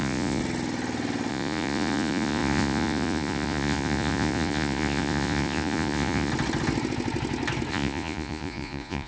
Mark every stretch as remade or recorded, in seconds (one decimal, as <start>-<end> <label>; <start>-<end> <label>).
0.0-0.4 remade; 0.4-1.3 recorded; 1.3-6.3 remade; 6.3-7.7 recorded; 7.7-9.1 remade